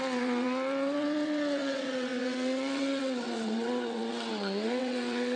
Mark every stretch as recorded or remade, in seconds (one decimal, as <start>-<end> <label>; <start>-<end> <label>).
0.0-5.4 remade